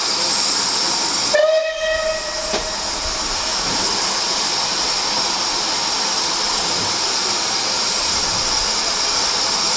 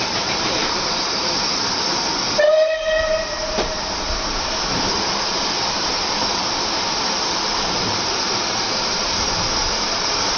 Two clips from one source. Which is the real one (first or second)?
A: first